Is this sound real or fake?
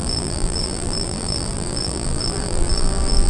fake